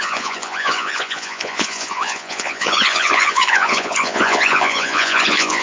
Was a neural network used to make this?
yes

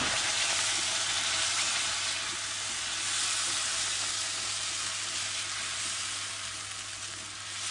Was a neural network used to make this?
no